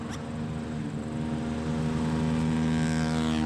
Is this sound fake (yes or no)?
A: no